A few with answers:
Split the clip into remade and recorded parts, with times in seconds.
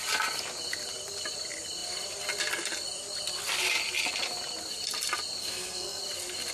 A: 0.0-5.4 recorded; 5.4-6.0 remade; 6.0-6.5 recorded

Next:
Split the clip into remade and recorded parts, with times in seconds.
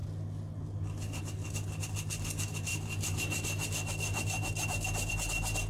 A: 0.0-5.7 recorded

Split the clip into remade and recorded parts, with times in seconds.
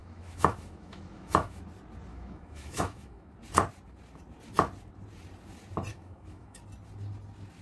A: 0.0-1.6 remade; 1.6-2.1 recorded; 2.1-3.3 remade; 3.3-5.9 recorded; 5.9-6.6 remade; 6.6-7.6 recorded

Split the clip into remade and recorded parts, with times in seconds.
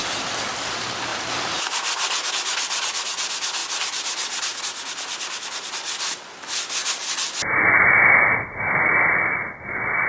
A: 0.0-1.1 recorded; 1.1-2.3 remade; 2.3-3.6 recorded; 3.6-4.6 remade; 4.6-10.1 recorded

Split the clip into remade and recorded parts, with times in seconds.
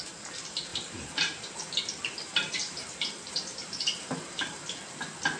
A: 0.0-0.7 recorded; 0.7-1.7 remade; 1.7-2.2 recorded; 2.2-4.6 remade; 4.6-5.4 recorded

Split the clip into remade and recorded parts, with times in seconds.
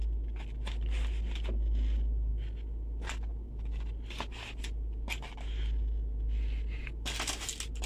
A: 0.0-7.9 recorded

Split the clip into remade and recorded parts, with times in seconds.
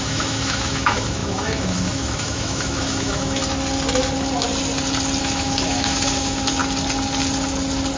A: 0.0-3.4 remade; 3.4-5.2 recorded; 5.2-6.6 remade; 6.6-8.0 recorded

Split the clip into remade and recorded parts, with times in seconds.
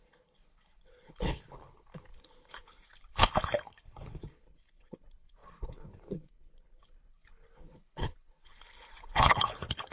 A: 0.0-9.9 remade